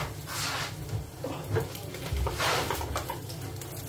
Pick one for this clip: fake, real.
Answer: real